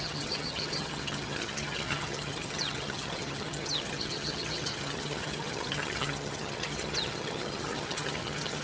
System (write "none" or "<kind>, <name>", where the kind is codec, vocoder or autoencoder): vocoder, HiFi-GAN